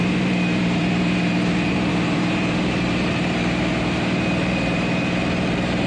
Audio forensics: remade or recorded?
remade